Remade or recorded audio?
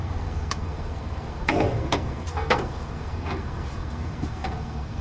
remade